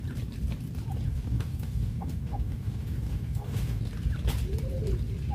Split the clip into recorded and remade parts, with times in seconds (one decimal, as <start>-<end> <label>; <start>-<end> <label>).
0.0-1.1 recorded; 1.1-3.8 remade; 3.8-5.3 recorded